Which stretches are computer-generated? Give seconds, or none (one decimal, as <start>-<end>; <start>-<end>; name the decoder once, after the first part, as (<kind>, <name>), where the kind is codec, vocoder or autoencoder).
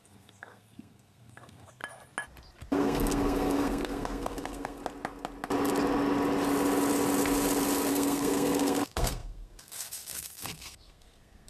0.0-1.8 (codec, SNAC); 2.7-4.8; 7.9-11.5